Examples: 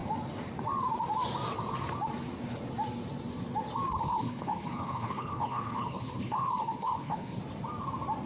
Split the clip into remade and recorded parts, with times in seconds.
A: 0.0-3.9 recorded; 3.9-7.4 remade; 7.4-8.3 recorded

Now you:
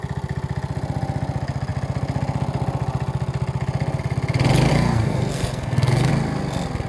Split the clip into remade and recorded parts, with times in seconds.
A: 0.0-4.7 recorded; 4.7-6.1 remade; 6.1-6.9 recorded

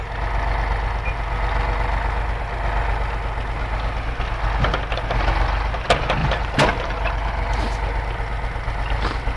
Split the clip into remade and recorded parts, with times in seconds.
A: 0.0-6.2 recorded; 6.2-7.6 remade; 7.6-9.4 recorded

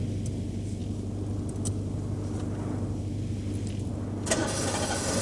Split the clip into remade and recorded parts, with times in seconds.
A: 0.0-5.2 recorded

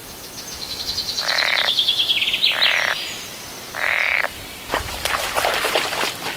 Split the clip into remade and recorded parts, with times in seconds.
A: 0.0-2.1 remade; 2.1-6.4 recorded

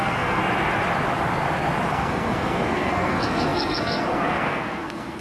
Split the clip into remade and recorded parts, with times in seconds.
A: 0.0-0.4 remade; 0.4-1.9 recorded; 1.9-5.2 remade